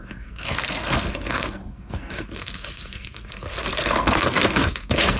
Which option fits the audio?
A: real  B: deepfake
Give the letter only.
B